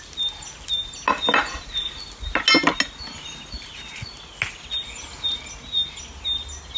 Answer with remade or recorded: recorded